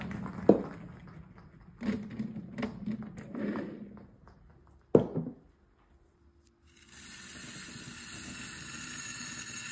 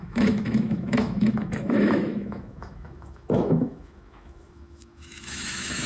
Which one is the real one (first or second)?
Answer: first